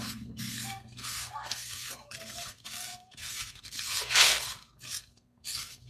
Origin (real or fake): fake